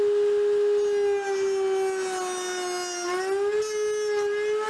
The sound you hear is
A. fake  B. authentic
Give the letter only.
B